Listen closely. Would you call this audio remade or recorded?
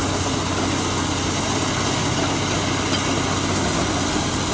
recorded